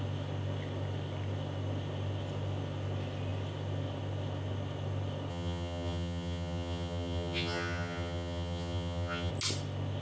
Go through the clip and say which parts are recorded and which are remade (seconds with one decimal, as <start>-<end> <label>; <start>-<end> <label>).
0.0-5.3 recorded; 5.3-9.3 remade; 9.3-10.0 recorded